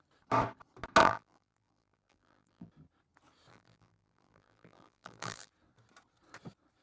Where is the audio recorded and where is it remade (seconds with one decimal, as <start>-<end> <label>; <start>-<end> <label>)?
0.0-1.0 recorded; 1.0-2.7 remade; 2.7-3.5 recorded; 3.5-5.5 remade; 5.5-6.8 recorded